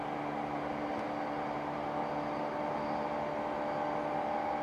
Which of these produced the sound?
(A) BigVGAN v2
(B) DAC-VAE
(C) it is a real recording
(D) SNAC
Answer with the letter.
C